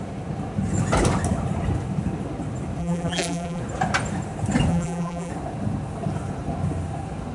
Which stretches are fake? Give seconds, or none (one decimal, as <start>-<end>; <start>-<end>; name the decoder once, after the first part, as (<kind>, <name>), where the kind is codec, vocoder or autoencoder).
2.8-3.6 (vocoder, BigVGAN v2); 4.7-5.3